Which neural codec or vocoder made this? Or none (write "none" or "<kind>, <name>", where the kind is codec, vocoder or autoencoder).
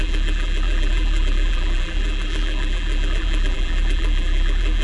vocoder, BigVGAN v2